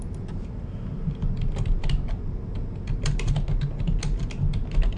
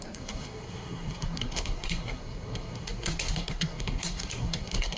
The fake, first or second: second